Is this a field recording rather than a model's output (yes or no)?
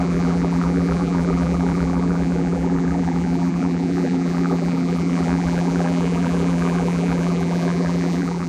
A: no